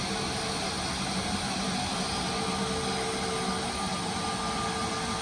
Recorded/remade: recorded